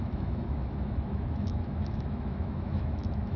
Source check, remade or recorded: remade